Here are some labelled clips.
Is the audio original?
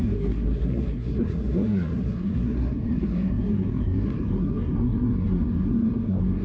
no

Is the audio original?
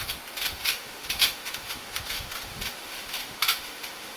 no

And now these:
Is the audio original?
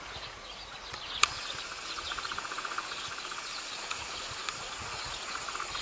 no